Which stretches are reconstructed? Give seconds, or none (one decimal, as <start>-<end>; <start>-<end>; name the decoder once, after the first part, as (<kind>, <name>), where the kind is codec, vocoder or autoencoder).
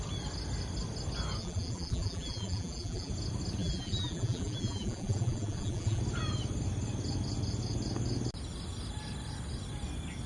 1.4-3.1 (vocoder, BigVGAN v2); 3.6-6.0